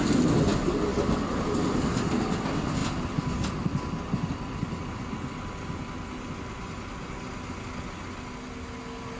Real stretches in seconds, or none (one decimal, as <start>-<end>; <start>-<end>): 0.0-9.2